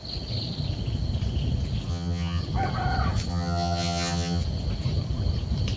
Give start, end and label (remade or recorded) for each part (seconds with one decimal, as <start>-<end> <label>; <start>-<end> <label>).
0.0-1.9 recorded; 1.9-2.4 remade; 2.4-3.3 recorded; 3.3-4.4 remade; 4.4-5.8 recorded